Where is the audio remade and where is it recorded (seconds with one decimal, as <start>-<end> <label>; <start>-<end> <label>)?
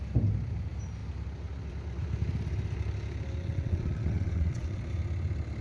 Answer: 0.0-3.4 recorded; 3.4-4.8 remade; 4.8-5.6 recorded